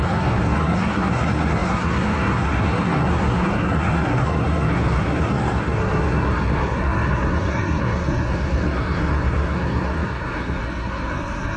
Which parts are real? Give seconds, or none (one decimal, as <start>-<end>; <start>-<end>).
none